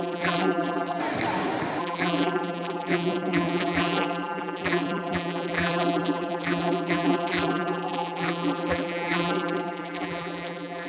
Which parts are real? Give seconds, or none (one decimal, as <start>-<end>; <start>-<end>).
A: 1.0-1.8